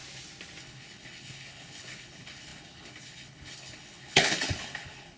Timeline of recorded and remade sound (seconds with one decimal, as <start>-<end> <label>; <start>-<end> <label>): 0.0-0.6 recorded; 0.6-5.2 remade